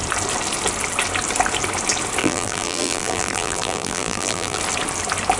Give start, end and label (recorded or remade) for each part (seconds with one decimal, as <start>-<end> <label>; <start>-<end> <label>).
0.0-2.2 recorded; 2.2-4.6 remade; 4.6-5.4 recorded